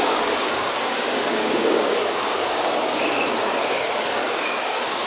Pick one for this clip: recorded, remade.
remade